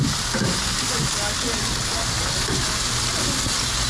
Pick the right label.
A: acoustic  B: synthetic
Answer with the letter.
A